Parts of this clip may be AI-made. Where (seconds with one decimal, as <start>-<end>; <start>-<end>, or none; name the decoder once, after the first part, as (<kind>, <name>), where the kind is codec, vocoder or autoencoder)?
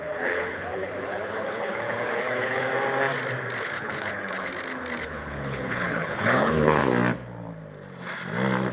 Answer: 0.0-2.7 (codec, HILCodec); 3.6-4.5; 5.0-6.8